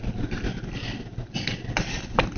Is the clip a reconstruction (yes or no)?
no